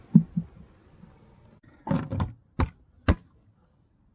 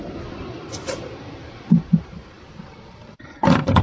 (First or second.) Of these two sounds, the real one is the first